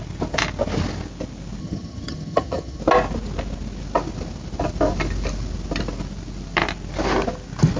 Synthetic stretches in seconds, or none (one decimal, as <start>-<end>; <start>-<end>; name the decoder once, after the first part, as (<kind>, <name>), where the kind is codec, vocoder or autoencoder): 1.6-2.8 (vocoder, HiFi-GAN)